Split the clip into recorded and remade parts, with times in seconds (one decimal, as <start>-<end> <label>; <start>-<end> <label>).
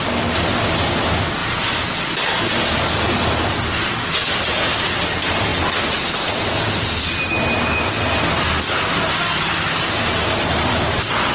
0.0-11.3 recorded